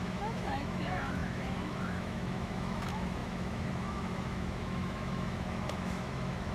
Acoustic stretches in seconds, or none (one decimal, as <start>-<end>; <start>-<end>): none